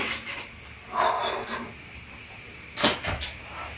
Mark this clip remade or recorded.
recorded